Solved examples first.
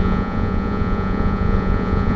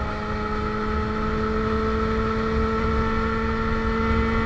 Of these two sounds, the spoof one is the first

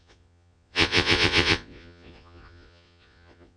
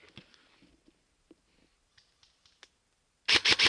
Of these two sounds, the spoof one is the first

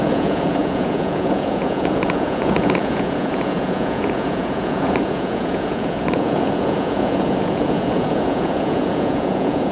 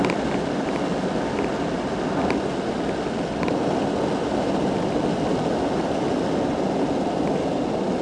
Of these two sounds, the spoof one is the first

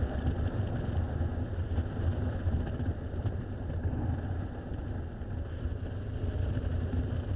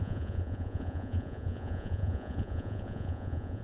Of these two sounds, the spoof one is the second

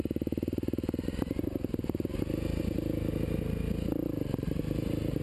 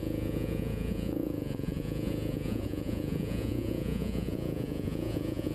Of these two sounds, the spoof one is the second